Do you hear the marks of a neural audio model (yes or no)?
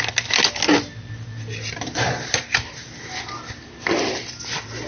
no